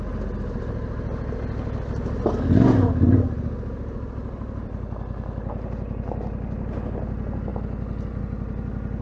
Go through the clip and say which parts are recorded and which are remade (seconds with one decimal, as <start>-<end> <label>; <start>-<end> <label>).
0.0-9.0 recorded